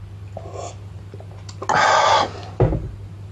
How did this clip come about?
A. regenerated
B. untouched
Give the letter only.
B